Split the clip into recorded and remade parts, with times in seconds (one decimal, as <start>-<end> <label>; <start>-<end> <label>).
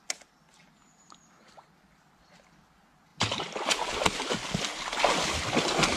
0.0-3.1 recorded; 3.1-4.2 remade; 4.2-6.0 recorded